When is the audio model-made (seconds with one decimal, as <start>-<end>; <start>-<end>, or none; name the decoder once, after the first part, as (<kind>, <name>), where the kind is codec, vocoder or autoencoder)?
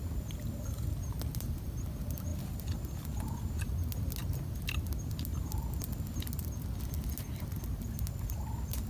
none